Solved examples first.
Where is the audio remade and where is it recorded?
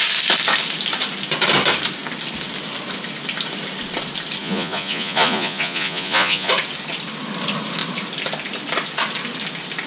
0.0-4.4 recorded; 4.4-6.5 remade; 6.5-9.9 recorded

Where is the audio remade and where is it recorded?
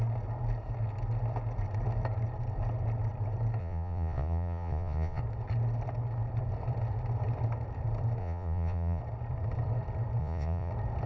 0.0-3.6 recorded; 3.6-5.2 remade; 5.2-8.2 recorded; 8.2-9.0 remade; 9.0-10.2 recorded; 10.2-10.7 remade; 10.7-11.1 recorded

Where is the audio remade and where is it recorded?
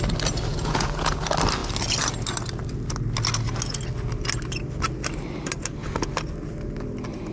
0.0-0.5 recorded; 0.5-1.2 remade; 1.2-7.3 recorded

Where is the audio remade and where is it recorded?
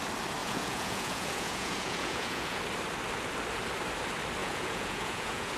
0.0-0.4 recorded; 0.4-2.6 remade; 2.6-4.4 recorded; 4.4-5.6 remade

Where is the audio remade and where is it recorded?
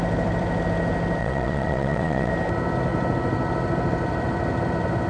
0.0-1.2 recorded; 1.2-2.3 remade; 2.3-5.1 recorded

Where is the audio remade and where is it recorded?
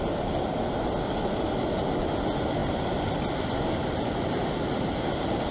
0.0-5.5 recorded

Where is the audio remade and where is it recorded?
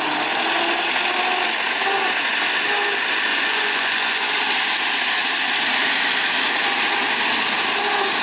0.0-3.3 recorded; 3.3-4.3 remade; 4.3-8.2 recorded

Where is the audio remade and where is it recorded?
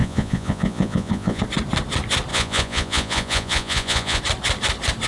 0.0-1.4 remade; 1.4-2.3 recorded; 2.3-4.2 remade; 4.2-5.1 recorded